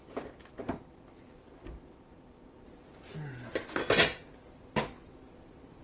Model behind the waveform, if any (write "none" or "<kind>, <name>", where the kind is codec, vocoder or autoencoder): none